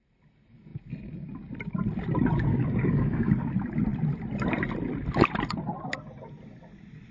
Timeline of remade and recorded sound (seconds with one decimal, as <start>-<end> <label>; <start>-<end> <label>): 0.0-2.5 recorded; 2.5-3.3 remade; 3.3-7.1 recorded